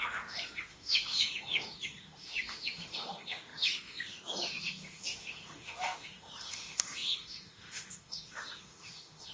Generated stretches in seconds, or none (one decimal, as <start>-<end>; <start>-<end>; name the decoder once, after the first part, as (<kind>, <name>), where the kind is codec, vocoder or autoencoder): 0.0-9.3 (autoencoder, DAC-VAE)